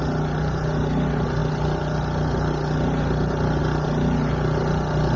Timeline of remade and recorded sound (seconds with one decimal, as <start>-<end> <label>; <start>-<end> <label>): 0.0-5.2 recorded